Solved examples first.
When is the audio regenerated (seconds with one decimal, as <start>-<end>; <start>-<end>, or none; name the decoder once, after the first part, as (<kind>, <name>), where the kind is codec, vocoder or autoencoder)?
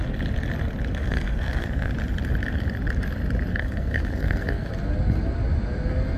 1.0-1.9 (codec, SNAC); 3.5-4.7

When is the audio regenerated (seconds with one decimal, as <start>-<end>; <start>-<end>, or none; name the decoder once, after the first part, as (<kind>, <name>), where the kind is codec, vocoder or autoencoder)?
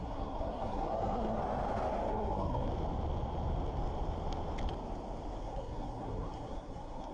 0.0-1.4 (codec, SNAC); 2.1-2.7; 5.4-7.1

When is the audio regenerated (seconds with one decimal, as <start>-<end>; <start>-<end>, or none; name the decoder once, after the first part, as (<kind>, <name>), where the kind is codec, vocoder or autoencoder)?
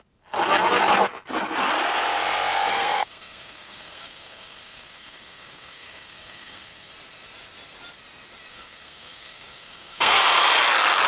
2.7-6.9 (codec, SNAC); 8.5-10.2